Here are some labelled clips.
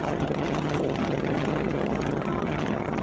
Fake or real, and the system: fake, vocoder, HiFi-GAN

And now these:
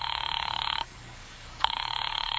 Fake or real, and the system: fake, codec, DAC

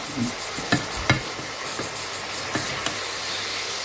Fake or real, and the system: real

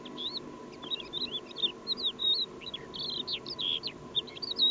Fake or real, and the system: real